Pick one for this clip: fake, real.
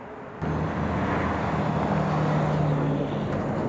real